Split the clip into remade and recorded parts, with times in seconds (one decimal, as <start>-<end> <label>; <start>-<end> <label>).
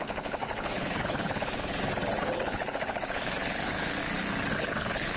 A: 0.0-1.7 remade; 1.7-2.2 recorded; 2.2-4.0 remade; 4.0-4.5 recorded; 4.5-5.2 remade